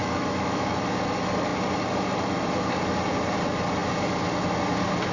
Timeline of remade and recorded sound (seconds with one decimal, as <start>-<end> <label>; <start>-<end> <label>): 0.0-0.8 remade; 0.8-5.1 recorded